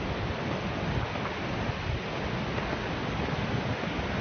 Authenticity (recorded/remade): recorded